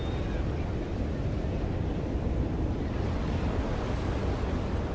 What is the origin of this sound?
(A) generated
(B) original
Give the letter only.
B